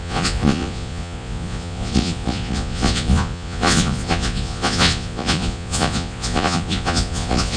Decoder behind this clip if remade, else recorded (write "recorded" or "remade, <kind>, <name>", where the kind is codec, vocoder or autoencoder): remade, vocoder, Vocos